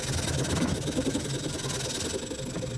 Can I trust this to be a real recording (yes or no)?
yes